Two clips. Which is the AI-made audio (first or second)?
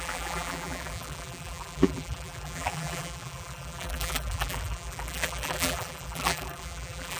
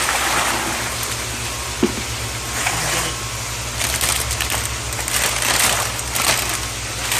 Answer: first